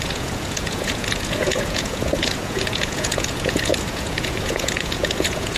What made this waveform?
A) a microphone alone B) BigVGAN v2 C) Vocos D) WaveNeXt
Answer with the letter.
C